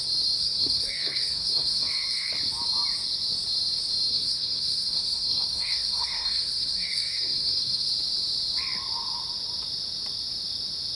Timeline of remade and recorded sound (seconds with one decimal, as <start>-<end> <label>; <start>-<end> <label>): 0.0-0.4 recorded; 0.4-2.3 remade; 2.3-4.1 recorded; 4.1-7.9 remade; 7.9-10.9 recorded